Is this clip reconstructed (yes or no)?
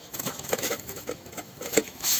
yes